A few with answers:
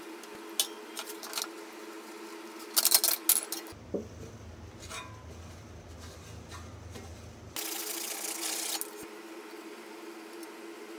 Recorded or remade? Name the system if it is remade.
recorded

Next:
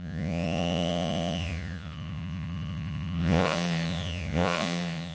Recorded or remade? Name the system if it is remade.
remade, vocoder, Vocos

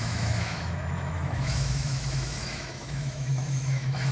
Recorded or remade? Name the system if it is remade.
remade, autoencoder, DAC-VAE